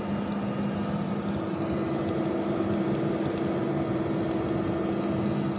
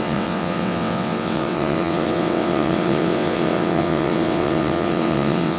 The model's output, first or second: second